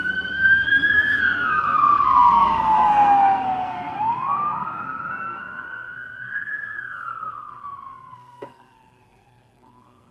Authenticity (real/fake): fake